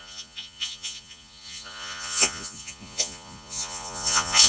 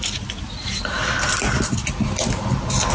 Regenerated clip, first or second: first